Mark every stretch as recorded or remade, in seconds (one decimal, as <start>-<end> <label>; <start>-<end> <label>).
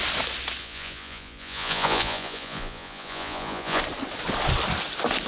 0.0-0.6 recorded; 0.6-3.8 remade; 3.8-5.3 recorded